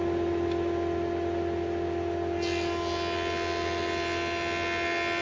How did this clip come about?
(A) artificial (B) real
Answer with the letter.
B